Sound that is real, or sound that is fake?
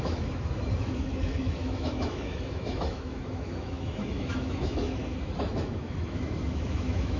fake